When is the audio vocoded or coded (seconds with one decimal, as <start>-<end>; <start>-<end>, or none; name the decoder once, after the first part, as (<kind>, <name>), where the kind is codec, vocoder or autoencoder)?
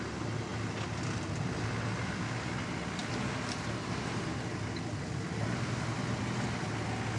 none